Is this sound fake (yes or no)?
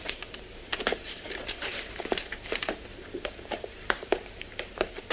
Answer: yes